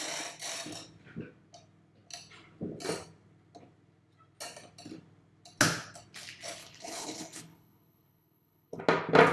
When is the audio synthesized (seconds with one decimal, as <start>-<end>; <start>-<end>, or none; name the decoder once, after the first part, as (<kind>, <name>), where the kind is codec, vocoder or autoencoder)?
6.6-8.8 (codec, HILCodec)